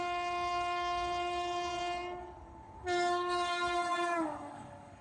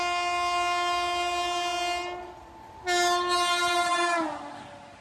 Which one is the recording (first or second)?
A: second